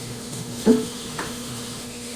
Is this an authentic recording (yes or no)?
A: no